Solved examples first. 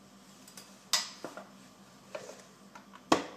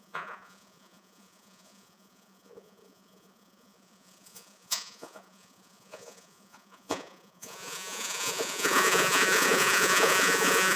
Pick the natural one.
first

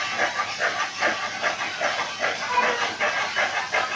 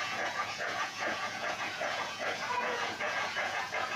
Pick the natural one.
first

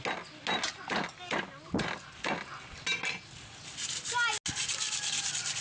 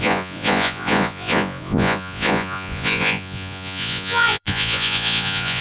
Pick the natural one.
first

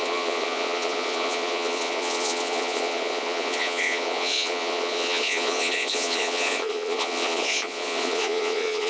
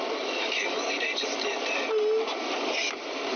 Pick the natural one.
second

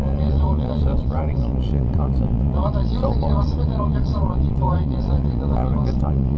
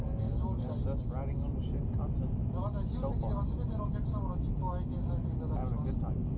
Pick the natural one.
second